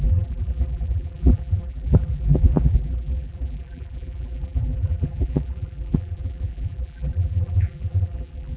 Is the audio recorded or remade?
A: remade